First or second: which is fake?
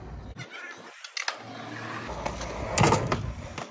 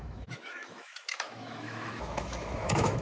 second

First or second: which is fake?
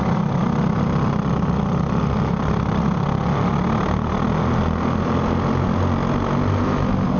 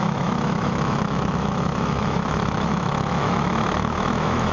second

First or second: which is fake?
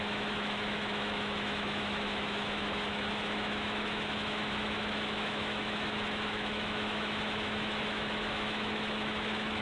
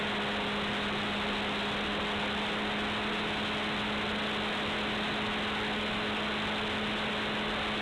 first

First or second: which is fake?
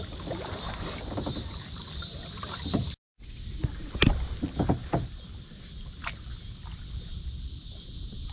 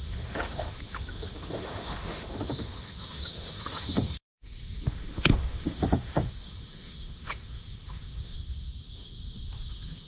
second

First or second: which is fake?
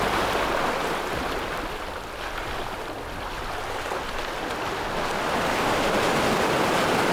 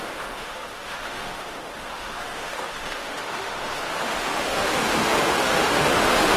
second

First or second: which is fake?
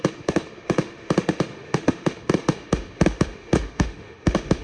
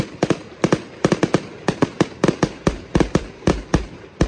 first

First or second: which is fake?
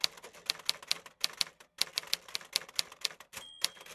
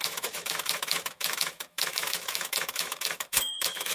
second